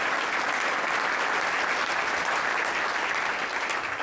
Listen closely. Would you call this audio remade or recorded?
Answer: recorded